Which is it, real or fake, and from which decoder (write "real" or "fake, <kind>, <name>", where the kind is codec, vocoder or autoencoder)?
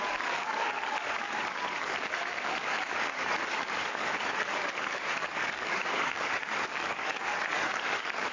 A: fake, codec, DAC